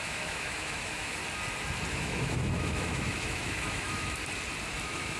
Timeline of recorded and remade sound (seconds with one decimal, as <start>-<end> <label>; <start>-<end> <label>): 0.0-1.2 remade; 1.2-1.9 recorded; 1.9-4.2 remade; 4.2-4.8 recorded; 4.8-5.2 remade